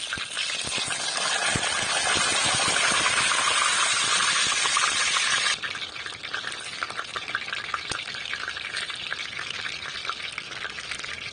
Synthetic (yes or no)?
no